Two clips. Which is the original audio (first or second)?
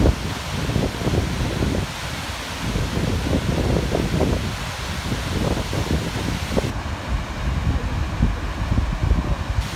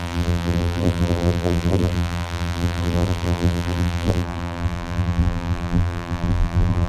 first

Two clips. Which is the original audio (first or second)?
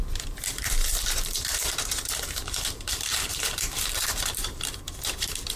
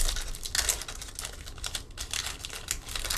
second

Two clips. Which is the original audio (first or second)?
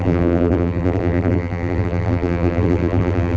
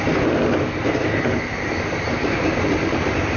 second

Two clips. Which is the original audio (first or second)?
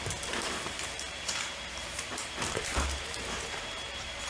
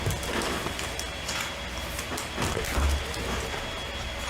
second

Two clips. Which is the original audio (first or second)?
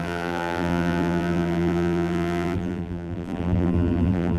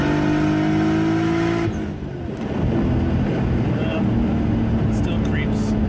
second